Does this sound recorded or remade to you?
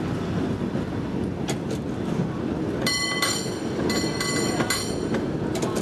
recorded